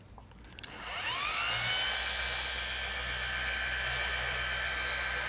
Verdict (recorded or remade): recorded